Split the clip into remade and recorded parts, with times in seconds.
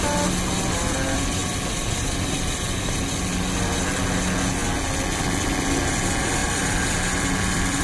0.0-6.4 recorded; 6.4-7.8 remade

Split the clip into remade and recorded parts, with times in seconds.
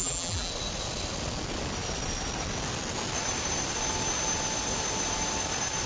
0.0-0.5 remade; 0.5-5.9 recorded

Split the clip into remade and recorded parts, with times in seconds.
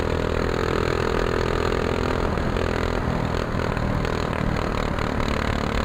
0.0-5.8 recorded